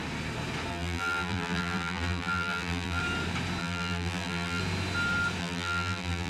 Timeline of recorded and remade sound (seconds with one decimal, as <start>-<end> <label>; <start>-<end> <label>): 0.0-0.7 recorded; 0.7-3.0 remade; 3.0-3.6 recorded; 3.6-4.6 remade; 4.6-5.4 recorded; 5.4-6.3 remade

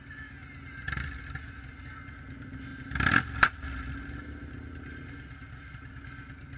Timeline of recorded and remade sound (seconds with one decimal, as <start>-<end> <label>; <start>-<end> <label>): 0.0-6.6 recorded

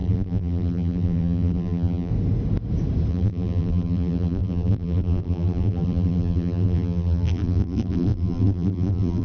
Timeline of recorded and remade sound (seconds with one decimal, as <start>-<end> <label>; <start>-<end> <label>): 0.0-2.1 remade; 2.1-3.1 recorded; 3.1-9.2 remade

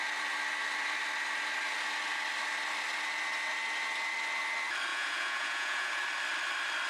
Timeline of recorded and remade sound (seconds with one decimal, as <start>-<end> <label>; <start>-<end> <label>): 0.0-4.9 recorded; 4.9-6.0 remade; 6.0-6.9 recorded